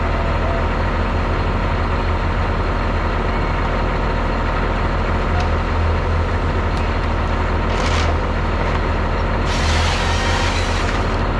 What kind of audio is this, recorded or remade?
recorded